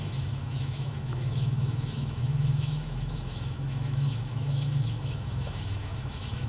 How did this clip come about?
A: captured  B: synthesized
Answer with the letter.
B